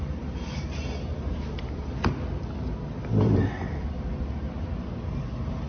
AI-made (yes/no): no